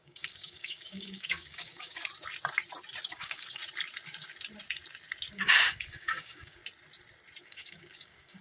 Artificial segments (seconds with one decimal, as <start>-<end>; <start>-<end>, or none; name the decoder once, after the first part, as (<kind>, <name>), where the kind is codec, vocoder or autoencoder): 0.0-2.0 (codec, DAC); 3.1-3.6; 5.3-6.6; 7.4-8.4